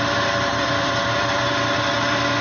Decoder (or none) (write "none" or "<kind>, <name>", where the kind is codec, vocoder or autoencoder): vocoder, BigVGAN v2